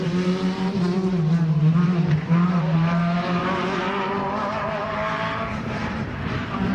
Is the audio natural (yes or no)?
no